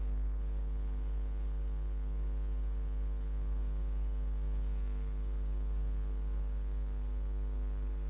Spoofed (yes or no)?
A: yes